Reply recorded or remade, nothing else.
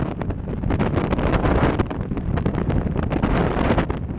remade